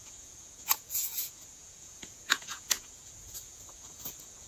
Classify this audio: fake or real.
fake